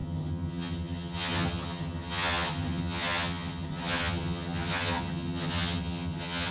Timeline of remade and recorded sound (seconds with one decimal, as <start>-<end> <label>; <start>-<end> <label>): 0.0-6.5 remade